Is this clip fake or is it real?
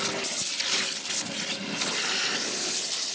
real